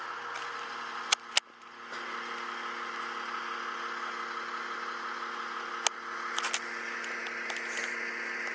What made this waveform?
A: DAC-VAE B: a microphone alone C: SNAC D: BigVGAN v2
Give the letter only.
B